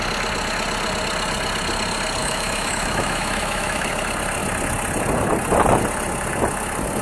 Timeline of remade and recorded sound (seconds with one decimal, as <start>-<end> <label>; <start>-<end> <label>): 0.0-2.2 recorded; 2.2-3.9 remade; 3.9-7.0 recorded